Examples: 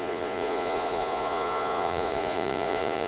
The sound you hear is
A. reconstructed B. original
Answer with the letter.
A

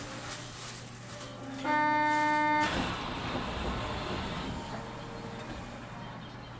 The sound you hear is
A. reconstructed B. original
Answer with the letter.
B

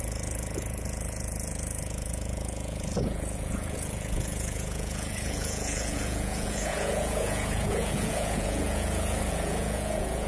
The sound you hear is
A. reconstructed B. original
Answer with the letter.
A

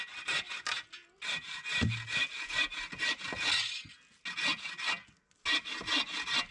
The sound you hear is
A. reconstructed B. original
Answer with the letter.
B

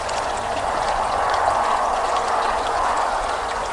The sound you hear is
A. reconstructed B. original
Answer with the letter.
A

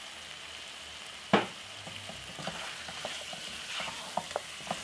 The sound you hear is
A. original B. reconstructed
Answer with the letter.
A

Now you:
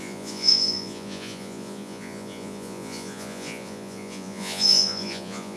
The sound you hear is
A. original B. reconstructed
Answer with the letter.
B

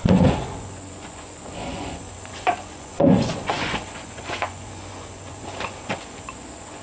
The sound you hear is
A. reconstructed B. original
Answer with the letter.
A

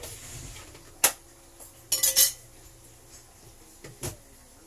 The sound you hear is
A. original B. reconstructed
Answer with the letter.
A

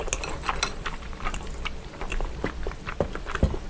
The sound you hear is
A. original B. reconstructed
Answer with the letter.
A